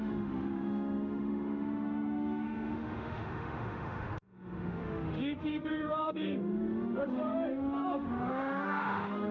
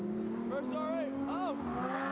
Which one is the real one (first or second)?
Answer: second